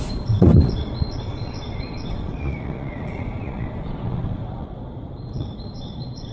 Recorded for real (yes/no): no